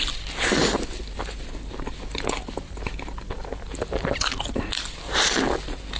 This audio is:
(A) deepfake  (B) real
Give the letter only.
B